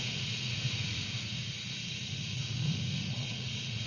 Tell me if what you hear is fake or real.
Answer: fake